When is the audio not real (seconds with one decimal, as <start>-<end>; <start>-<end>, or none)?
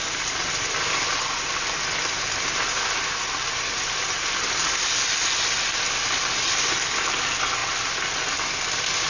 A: none